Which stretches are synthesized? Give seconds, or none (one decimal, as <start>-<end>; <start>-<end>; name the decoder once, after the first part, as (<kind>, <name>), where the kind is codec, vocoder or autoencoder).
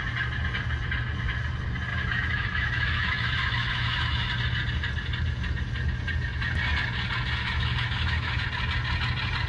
1.9-4.3 (autoencoder, DAC-VAE); 7.4-8.4